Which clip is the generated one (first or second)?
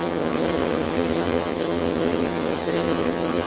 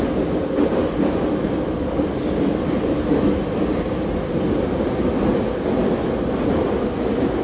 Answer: first